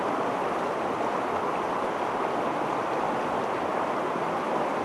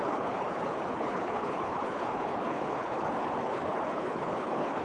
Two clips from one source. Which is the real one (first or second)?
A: first